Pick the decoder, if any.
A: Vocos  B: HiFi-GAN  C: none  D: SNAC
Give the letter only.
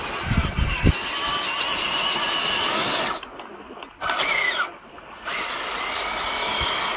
C